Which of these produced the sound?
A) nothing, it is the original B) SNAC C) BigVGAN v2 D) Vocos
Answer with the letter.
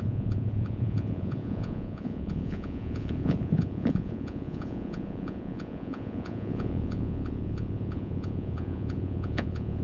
D